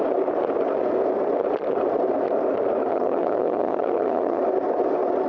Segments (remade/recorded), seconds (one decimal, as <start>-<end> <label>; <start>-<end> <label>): 0.0-2.9 recorded; 2.9-4.4 remade; 4.4-5.3 recorded